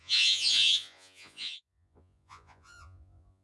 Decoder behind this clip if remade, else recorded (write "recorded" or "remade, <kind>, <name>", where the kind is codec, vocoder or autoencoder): remade, vocoder, Vocos